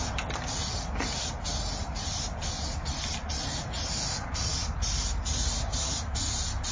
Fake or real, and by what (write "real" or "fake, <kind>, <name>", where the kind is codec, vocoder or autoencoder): real